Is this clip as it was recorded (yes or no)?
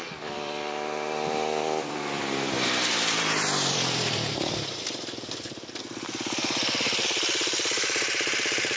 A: no